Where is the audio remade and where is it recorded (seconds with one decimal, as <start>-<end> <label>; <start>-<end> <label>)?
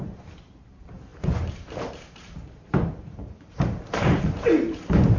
0.0-5.2 remade